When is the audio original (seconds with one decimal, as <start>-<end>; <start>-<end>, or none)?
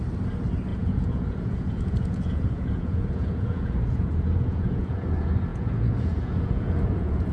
0.0-0.7; 5.1-5.5